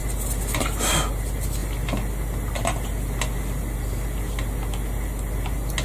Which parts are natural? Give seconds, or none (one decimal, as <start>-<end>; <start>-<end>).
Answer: 0.0-5.8